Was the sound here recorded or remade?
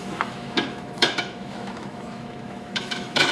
remade